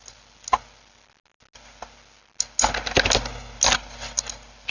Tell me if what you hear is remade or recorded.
recorded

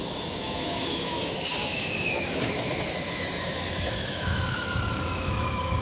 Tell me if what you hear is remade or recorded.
remade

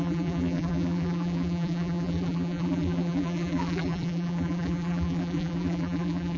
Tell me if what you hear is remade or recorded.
remade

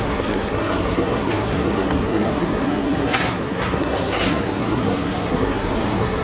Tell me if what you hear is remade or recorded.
remade